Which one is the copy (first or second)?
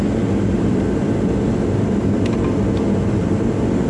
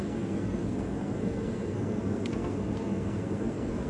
second